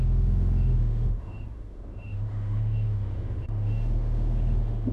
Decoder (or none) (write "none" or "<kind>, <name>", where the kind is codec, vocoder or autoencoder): autoencoder, DAC-VAE